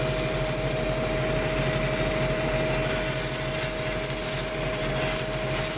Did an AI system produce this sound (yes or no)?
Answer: no